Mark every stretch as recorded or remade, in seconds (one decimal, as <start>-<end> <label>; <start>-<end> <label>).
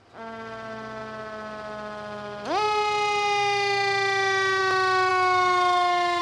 0.0-5.1 recorded; 5.1-6.2 remade